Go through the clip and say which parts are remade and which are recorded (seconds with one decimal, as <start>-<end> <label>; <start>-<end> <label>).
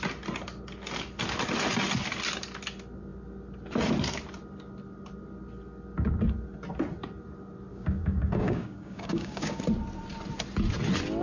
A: 0.0-7.7 recorded; 7.7-9.6 remade; 9.6-11.2 recorded